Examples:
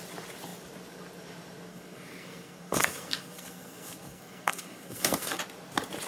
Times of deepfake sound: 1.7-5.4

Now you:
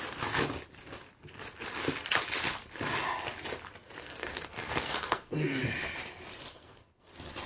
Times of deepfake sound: 4.0-5.6; 6.5-7.1

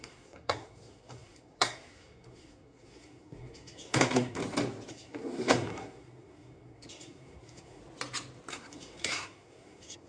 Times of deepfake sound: 0.0-4.4; 4.9-7.8; 8.5-10.1

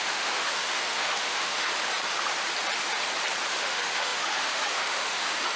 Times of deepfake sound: 0.0-1.7; 3.5-5.6

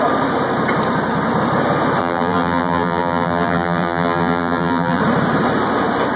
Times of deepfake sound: 2.0-5.0

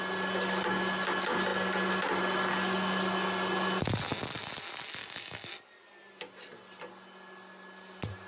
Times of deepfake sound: 5.0-5.5

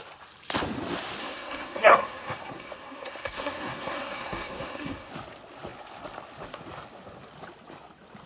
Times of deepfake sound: 1.2-5.1

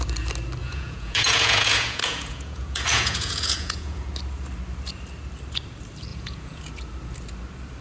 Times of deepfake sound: 0.6-4.1; 6.1-6.7